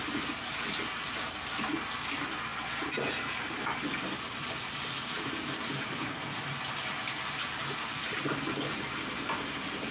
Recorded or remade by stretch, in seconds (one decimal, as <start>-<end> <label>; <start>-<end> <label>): 0.0-9.9 recorded